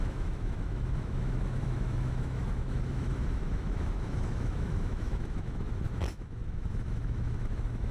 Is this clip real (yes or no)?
no